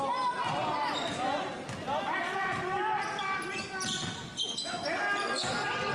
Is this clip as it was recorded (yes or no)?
yes